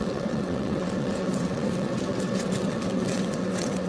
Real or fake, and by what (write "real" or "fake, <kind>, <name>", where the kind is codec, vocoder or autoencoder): fake, vocoder, WaveNeXt